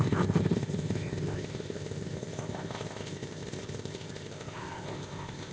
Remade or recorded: remade